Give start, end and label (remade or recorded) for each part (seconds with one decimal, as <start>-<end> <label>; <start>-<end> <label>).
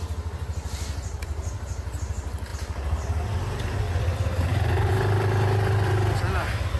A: 0.0-6.8 recorded